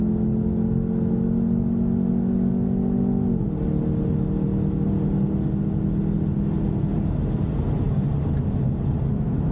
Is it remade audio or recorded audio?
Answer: recorded